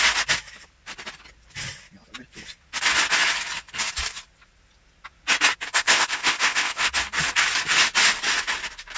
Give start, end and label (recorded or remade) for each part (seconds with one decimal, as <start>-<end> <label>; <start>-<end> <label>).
0.0-5.8 recorded; 5.8-6.9 remade; 6.9-9.0 recorded